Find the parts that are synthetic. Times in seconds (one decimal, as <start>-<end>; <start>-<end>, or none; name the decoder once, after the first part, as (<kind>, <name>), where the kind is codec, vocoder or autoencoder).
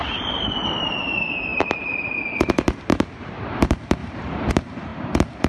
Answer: 0.0-5.5 (vocoder, BigVGAN v2)